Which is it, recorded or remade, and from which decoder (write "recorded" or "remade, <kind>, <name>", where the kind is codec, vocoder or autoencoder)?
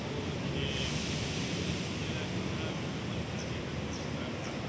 recorded